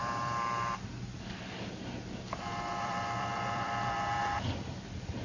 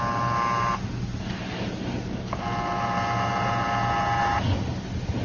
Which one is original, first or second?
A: second